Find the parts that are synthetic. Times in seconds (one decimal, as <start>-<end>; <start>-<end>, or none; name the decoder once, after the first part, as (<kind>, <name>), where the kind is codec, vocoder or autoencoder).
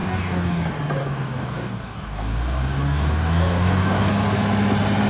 0.0-0.6 (codec, DAC); 1.0-4.1